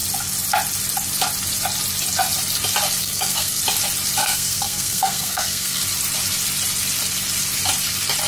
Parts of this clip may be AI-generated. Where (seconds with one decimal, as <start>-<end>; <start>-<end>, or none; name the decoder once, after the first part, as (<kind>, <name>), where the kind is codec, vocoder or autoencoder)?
3.0-3.6 (codec, SNAC); 4.2-5.8